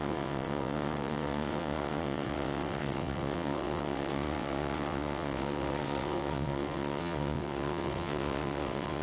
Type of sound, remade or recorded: remade